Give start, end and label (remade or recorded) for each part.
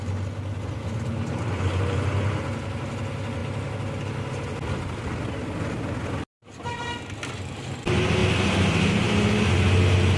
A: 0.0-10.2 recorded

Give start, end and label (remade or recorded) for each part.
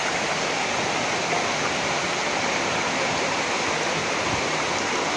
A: 0.0-5.2 recorded